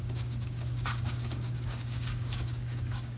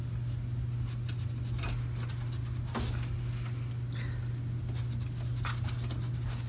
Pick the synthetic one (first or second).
first